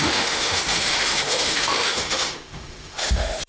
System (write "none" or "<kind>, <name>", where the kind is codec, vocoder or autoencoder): autoencoder, DAC-VAE